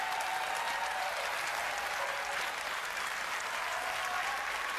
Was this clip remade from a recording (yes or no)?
no